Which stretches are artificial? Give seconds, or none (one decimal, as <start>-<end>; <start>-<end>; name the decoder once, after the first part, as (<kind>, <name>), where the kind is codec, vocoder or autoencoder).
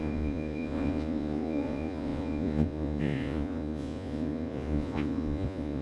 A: 0.0-5.8 (vocoder, Vocos)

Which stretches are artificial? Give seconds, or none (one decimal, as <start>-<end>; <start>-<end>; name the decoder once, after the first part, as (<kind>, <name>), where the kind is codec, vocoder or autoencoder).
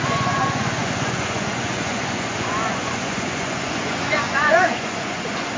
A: 0.0-5.6 (vocoder, Vocos)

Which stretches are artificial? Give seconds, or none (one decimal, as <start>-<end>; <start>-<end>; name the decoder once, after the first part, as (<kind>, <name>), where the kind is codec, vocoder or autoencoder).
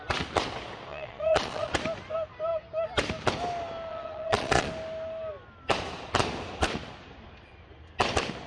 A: 0.9-1.7 (vocoder, Vocos); 3.9-4.7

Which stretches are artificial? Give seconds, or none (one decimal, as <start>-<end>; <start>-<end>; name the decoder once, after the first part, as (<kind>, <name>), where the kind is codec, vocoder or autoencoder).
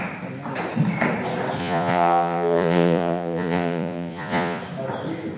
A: 1.6-4.6 (vocoder, Vocos)